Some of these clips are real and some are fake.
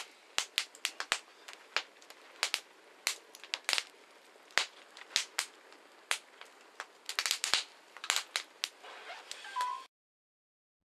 real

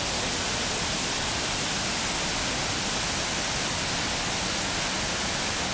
real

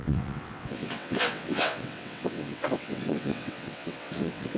fake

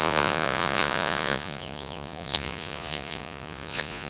fake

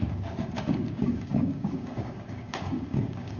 fake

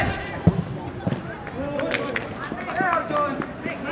real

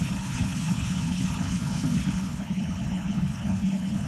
fake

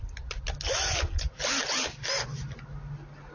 real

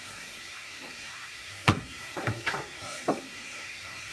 fake